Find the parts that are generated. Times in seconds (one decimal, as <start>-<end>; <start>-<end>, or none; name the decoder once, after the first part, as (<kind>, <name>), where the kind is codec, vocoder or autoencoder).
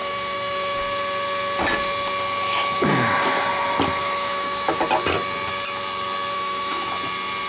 0.0-0.8 (autoencoder, DAC-VAE); 4.0-4.8; 6.3-6.9